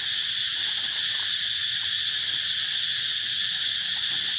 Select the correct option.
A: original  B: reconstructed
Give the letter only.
A